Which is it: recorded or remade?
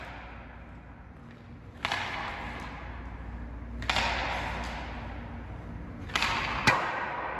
recorded